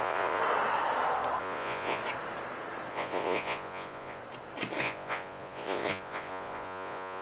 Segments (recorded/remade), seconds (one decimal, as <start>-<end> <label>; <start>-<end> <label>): 0.0-0.4 remade; 0.4-1.4 recorded; 1.4-2.0 remade; 2.0-2.9 recorded; 2.9-4.2 remade; 4.2-4.8 recorded; 4.8-7.2 remade